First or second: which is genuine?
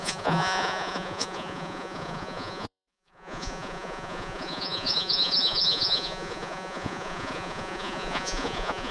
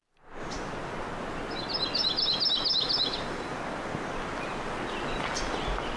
second